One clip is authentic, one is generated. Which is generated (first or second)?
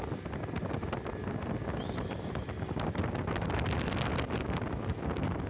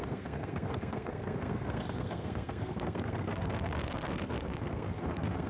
second